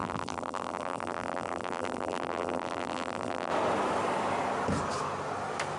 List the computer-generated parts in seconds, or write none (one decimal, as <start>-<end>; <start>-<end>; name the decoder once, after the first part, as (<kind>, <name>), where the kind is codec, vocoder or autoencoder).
0.0-3.5 (vocoder, BigVGAN v2)